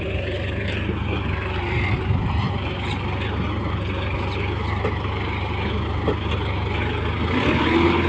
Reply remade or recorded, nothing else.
recorded